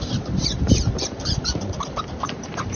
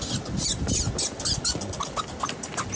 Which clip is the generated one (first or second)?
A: first